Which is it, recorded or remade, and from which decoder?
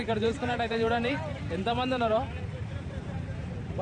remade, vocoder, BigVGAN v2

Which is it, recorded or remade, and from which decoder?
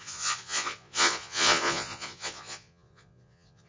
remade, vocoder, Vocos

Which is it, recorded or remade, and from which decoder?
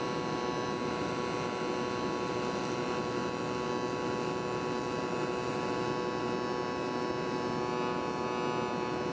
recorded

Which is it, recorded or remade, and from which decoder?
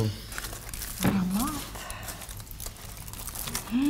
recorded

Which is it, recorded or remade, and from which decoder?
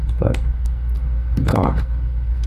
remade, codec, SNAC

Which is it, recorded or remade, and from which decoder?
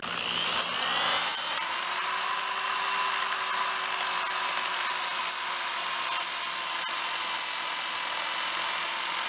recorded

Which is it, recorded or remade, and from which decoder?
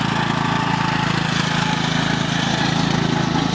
recorded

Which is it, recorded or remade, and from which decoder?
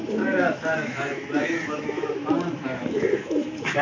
remade, autoencoder, DAC-VAE